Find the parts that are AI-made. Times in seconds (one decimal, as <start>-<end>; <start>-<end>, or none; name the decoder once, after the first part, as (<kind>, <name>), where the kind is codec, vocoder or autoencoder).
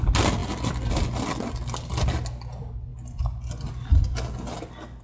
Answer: none